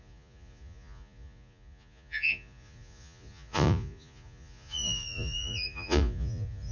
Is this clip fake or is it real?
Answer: fake